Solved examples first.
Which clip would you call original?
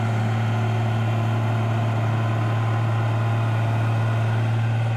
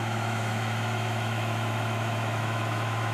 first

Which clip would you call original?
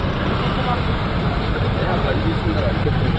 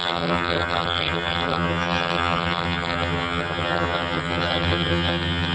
first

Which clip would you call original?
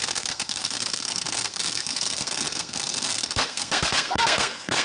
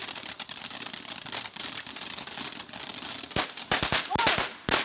second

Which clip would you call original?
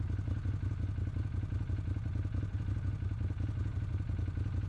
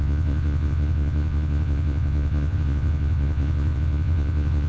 first